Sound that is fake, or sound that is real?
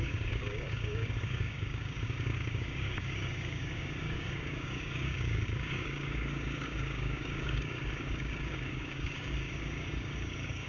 fake